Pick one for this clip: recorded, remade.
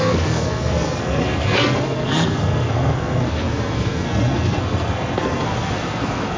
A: remade